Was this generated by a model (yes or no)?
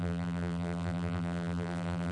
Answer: yes